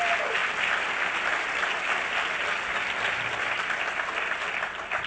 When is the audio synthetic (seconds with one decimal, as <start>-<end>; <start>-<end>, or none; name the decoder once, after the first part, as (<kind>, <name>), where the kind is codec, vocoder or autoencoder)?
none

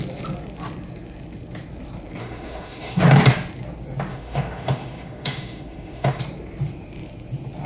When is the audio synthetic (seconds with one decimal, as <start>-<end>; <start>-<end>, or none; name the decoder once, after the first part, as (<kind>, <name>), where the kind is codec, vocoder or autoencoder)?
2.2-3.0 (autoencoder, DAC-VAE); 4.1-6.2

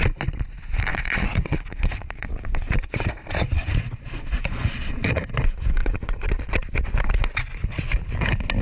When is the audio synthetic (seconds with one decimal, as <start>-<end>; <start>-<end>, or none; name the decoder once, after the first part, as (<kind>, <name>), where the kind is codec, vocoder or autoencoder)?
0.9-5.2 (vocoder, Vocos); 5.8-6.3

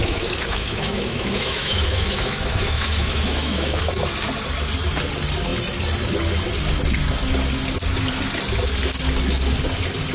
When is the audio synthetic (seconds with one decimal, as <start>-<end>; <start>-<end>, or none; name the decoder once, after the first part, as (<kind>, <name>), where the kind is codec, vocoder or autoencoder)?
0.0-3.8 (autoencoder, DAC-VAE)

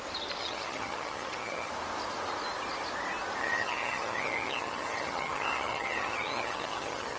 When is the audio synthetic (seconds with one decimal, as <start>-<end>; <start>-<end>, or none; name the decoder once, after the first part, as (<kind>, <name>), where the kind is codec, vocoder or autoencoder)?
0.4-1.7 (vocoder, HiFi-GAN); 3.4-7.2

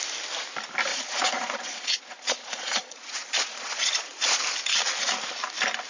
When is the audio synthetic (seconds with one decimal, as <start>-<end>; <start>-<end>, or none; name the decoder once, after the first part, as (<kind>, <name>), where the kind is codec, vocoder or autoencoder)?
0.9-4.4 (vocoder, Vocos)

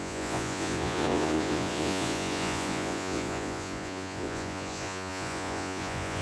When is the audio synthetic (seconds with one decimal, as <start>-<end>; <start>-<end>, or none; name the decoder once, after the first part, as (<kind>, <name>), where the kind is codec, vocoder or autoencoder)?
0.0-6.2 (vocoder, Vocos)

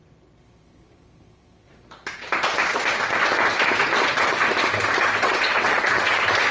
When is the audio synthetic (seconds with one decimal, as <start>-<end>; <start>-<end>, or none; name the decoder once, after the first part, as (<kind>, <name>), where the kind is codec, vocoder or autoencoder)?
5.2-6.0 (vocoder, WaveNeXt)